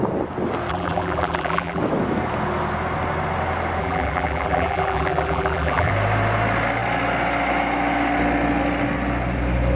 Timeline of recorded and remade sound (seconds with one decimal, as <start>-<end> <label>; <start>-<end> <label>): 0.0-0.7 recorded; 0.7-1.8 remade; 1.8-3.8 recorded; 3.8-5.9 remade; 5.9-9.8 recorded